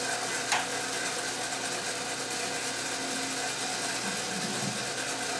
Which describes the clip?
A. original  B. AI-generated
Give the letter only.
A